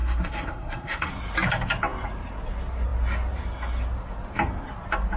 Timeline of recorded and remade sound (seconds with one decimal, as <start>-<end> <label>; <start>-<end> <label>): 0.0-1.1 remade; 1.1-5.2 recorded